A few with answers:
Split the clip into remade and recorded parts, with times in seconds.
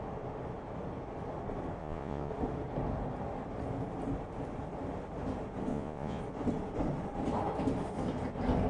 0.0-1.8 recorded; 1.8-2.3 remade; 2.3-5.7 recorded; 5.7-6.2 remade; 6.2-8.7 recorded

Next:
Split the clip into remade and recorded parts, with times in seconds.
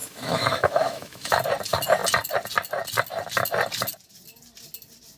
0.0-1.4 remade; 1.4-5.2 recorded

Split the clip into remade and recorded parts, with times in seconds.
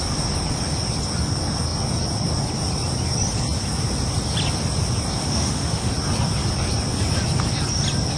0.0-5.2 recorded; 5.2-5.9 remade; 5.9-8.2 recorded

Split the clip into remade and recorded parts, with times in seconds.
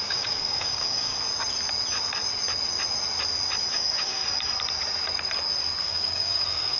0.0-1.1 remade; 1.1-3.7 recorded; 3.7-4.2 remade; 4.2-5.8 recorded; 5.8-6.8 remade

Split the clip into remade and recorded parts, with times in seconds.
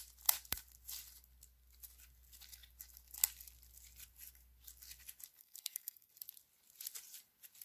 0.0-5.4 recorded; 5.4-6.1 remade; 6.1-7.6 recorded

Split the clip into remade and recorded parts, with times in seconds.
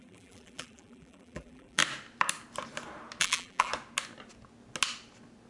0.0-1.8 remade; 1.8-3.2 recorded; 3.2-3.7 remade; 3.7-5.5 recorded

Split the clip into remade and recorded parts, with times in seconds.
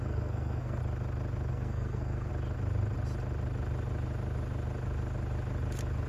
0.0-0.8 remade; 0.8-1.5 recorded; 1.5-2.3 remade; 2.3-6.1 recorded